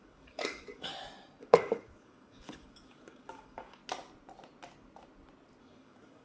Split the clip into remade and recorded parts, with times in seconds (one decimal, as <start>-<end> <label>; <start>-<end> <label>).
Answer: 0.0-0.9 remade; 0.9-1.4 recorded; 1.4-3.8 remade; 3.8-5.6 recorded; 5.6-6.2 remade